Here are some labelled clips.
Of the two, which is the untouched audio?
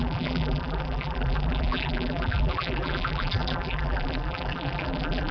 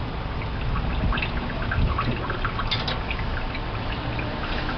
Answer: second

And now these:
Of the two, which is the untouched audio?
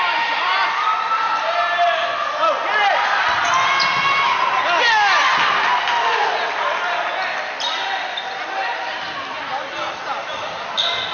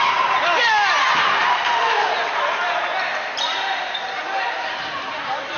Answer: first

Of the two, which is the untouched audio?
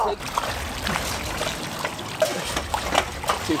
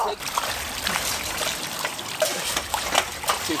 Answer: first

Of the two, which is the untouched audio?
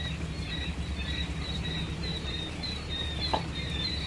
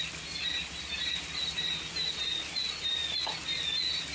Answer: second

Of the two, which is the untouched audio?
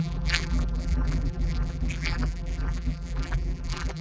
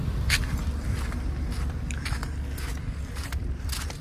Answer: second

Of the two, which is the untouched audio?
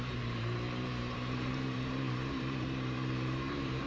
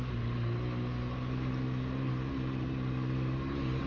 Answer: second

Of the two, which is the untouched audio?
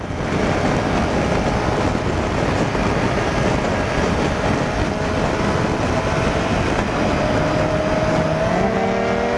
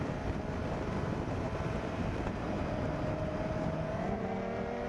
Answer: first